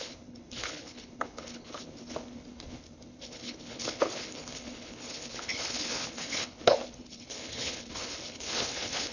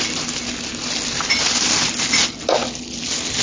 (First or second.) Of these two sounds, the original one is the second